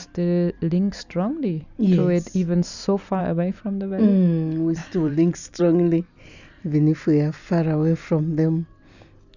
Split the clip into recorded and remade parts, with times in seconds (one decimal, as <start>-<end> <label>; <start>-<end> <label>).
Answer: 0.0-4.8 recorded; 4.8-5.6 remade; 5.6-9.4 recorded